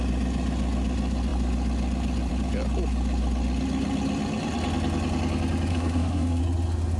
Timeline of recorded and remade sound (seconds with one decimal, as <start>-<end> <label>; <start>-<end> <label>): 0.0-5.7 recorded; 5.7-6.4 remade; 6.4-7.0 recorded